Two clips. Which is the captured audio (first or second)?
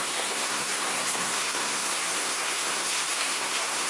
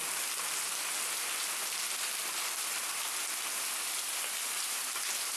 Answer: second